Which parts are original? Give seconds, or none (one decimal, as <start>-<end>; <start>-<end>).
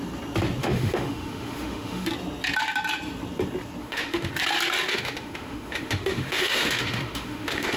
0.0-0.6; 2.1-3.8; 4.3-4.9